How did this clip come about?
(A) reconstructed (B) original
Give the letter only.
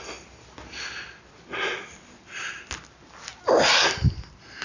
B